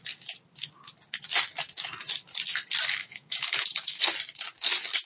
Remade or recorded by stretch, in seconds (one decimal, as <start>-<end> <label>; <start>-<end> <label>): 0.0-3.0 recorded; 3.0-4.0 remade; 4.0-5.0 recorded